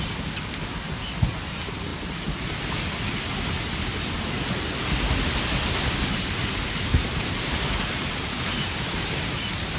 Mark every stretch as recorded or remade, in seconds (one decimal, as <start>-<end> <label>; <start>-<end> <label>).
0.0-9.8 recorded